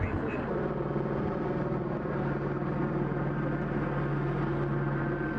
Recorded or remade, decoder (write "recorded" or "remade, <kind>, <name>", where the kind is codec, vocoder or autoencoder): recorded